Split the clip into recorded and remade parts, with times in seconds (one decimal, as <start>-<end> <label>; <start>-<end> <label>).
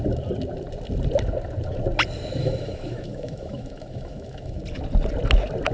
0.0-2.4 recorded; 2.4-4.6 remade; 4.6-5.7 recorded